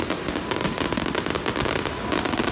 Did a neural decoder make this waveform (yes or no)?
no